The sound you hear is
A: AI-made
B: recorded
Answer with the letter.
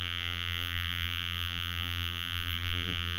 A